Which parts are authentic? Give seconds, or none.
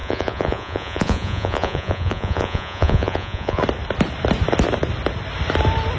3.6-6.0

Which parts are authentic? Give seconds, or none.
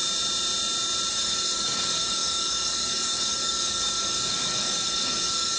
0.0-1.1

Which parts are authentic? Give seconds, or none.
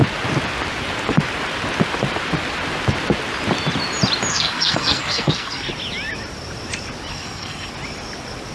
0.0-4.3; 5.7-7.1; 7.7-8.5